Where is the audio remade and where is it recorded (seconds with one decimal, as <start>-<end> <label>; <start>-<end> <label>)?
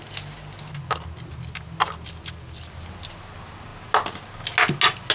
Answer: 0.0-5.1 recorded